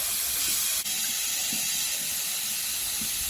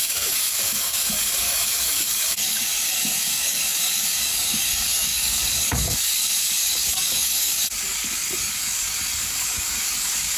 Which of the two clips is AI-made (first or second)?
second